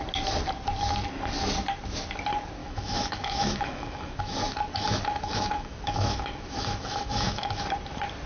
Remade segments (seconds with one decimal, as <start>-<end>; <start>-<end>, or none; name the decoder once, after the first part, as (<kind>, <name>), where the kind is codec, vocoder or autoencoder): 2.6-7.6 (autoencoder, DAC-VAE)